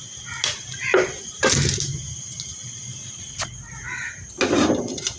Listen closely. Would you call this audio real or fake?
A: fake